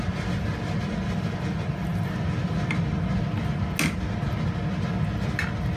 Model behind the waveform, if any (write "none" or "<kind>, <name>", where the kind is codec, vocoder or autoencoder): none